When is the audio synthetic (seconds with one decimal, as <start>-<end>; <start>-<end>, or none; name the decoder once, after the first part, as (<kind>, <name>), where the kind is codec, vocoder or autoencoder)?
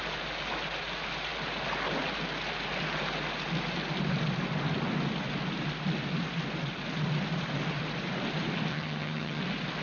8.7-9.4 (vocoder, HiFi-GAN)